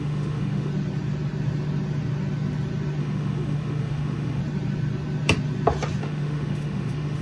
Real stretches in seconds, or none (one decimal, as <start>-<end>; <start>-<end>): 0.7-3.0; 4.4-6.0